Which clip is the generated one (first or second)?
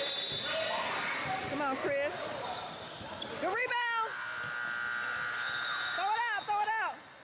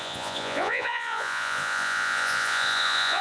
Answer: second